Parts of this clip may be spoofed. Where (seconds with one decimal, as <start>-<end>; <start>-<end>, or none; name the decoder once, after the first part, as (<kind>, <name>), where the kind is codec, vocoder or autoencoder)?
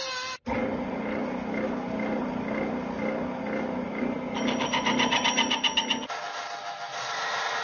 none